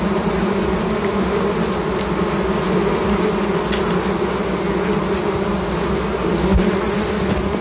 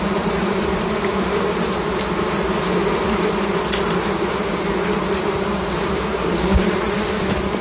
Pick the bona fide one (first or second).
first